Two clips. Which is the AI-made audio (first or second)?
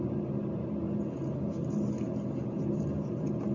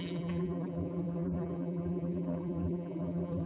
second